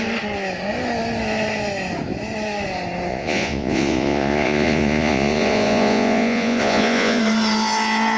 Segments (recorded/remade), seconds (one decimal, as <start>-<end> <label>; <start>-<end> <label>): 0.0-3.1 recorded; 3.1-7.2 remade; 7.2-8.2 recorded